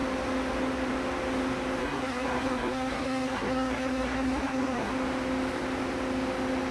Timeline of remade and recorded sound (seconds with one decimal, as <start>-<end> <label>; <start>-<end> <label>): 0.0-1.8 recorded; 1.8-4.9 remade; 4.9-6.7 recorded